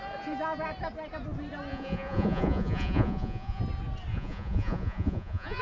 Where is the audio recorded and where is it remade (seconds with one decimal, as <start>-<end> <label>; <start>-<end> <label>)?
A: 0.0-1.7 recorded; 1.7-3.6 remade; 3.6-4.1 recorded; 4.1-5.6 remade